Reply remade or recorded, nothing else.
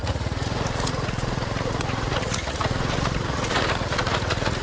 remade